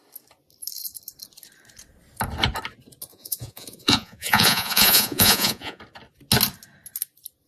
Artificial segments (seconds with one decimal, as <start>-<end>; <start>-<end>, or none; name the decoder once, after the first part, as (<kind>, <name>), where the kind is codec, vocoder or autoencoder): 3.1-5.8 (vocoder, Vocos)